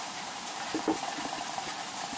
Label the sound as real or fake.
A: real